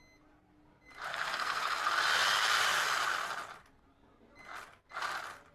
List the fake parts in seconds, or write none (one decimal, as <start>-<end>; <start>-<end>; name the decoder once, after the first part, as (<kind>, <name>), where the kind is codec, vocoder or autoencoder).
1.1-1.8 (codec, SNAC)